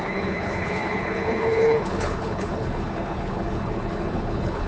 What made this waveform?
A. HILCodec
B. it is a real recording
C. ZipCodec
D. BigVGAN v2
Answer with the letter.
A